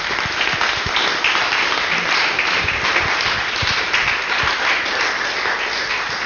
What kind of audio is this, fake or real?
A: real